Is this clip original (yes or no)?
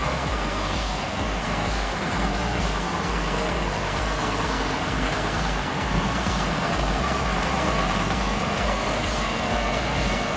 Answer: no